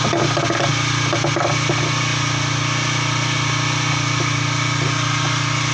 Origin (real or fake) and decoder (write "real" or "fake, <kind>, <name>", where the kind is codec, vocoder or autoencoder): real